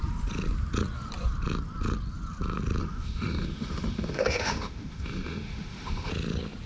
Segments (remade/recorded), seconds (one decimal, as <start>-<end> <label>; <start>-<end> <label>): 0.0-2.8 recorded; 2.8-6.1 remade; 6.1-6.7 recorded